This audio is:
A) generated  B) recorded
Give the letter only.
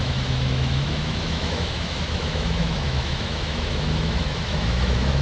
A